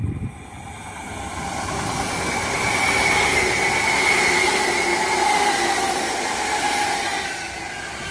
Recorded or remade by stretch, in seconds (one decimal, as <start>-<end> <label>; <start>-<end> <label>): 0.0-8.1 recorded

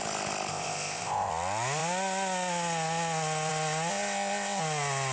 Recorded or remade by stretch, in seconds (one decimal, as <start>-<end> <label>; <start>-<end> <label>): 0.0-0.5 recorded; 0.5-1.3 remade; 1.3-3.9 recorded; 3.9-4.6 remade; 4.6-5.1 recorded

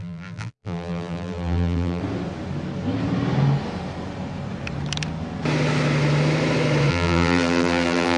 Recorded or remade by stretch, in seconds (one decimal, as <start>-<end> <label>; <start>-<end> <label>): 0.0-2.0 remade; 2.0-6.9 recorded; 6.9-8.2 remade